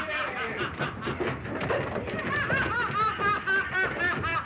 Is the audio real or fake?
real